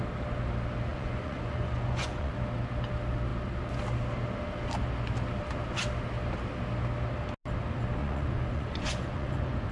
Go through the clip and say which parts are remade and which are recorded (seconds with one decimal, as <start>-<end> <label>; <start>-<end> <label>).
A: 0.0-0.9 recorded; 0.9-2.3 remade; 2.3-8.0 recorded; 8.0-9.7 remade